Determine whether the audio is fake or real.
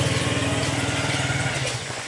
fake